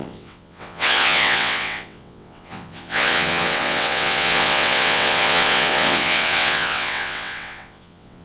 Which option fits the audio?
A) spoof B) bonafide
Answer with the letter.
A